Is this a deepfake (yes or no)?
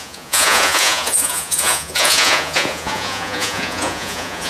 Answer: yes